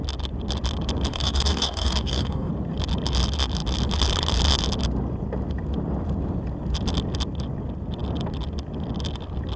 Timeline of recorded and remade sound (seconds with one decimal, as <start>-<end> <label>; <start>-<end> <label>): 0.0-1.1 recorded; 1.1-2.5 remade; 2.5-9.6 recorded